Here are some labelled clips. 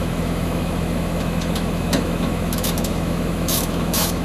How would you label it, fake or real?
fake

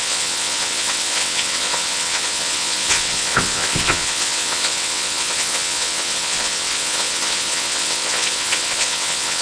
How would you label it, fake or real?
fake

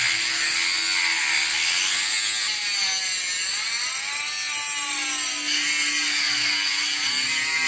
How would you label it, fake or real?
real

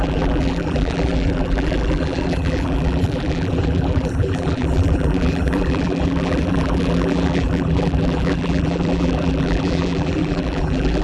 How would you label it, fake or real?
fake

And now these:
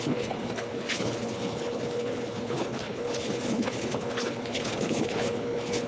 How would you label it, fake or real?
fake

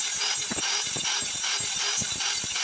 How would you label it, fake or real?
real